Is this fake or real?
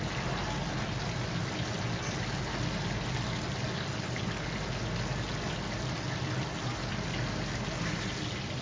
real